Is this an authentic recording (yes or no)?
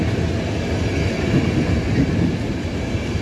yes